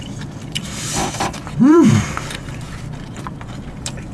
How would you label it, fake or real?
fake